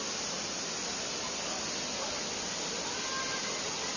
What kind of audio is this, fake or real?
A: real